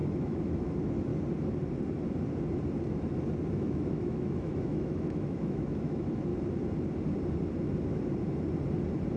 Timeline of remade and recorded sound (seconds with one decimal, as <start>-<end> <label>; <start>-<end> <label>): 0.0-1.1 remade; 1.1-3.5 recorded; 3.5-6.3 remade; 6.3-9.2 recorded

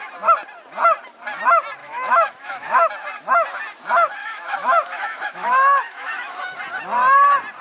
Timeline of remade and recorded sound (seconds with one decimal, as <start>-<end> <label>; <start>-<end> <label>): 0.0-1.8 recorded; 1.8-2.9 remade; 2.9-4.2 recorded; 4.2-6.4 remade; 6.4-7.6 recorded

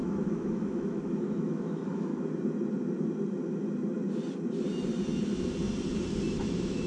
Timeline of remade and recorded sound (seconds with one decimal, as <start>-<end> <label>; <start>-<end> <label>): 0.0-2.1 remade; 2.1-6.2 recorded; 6.2-6.9 remade

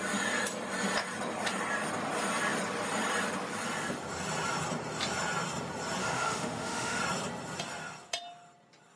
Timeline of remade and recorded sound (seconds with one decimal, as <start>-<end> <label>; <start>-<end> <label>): 0.0-6.0 recorded; 6.0-7.0 remade; 7.0-9.0 recorded

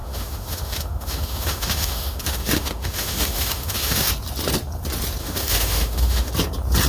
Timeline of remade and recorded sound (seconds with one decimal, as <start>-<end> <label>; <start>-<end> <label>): 0.0-4.1 remade; 4.1-5.2 recorded; 5.2-6.3 remade; 6.3-6.9 recorded

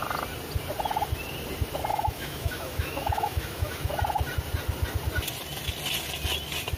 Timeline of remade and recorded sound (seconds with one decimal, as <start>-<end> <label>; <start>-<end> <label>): 0.0-1.9 recorded; 1.9-3.9 remade; 3.9-6.8 recorded